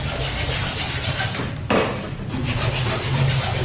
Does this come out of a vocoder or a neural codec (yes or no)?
yes